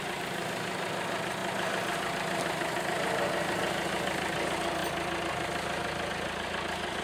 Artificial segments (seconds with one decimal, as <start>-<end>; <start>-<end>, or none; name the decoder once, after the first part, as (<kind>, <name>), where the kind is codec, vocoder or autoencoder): none